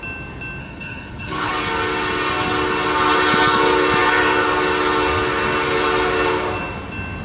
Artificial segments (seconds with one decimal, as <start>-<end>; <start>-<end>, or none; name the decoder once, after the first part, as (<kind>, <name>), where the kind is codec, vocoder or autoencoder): 0.6-1.5 (codec, HILCodec)